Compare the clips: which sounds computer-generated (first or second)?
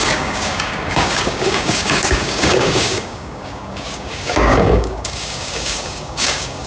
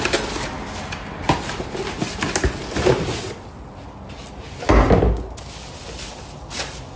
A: first